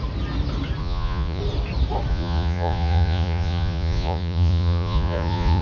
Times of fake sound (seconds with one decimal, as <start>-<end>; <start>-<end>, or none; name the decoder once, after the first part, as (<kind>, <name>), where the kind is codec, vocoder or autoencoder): 0.8-1.4 (vocoder, Vocos); 2.1-5.6